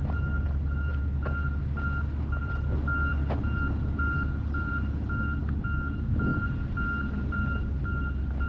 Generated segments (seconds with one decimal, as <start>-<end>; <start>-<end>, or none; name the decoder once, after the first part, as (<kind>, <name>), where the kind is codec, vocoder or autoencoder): none